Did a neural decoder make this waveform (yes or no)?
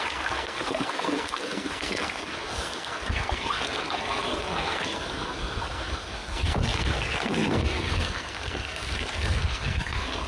yes